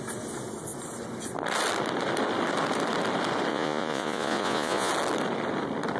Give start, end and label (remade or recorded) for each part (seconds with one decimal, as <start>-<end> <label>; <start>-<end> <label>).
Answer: 0.0-3.5 recorded; 3.5-4.9 remade; 4.9-6.0 recorded